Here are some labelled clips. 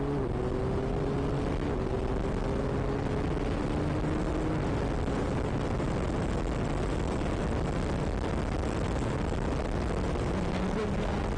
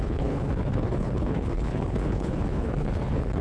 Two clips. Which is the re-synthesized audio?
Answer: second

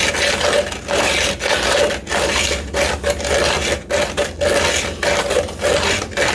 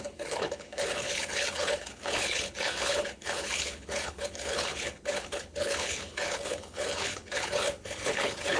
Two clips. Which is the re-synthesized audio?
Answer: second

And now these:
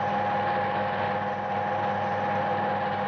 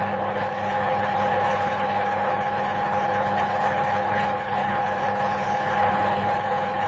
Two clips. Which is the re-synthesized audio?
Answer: second